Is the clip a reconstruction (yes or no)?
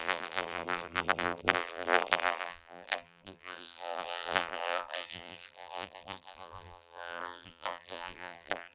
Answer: yes